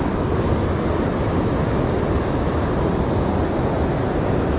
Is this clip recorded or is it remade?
recorded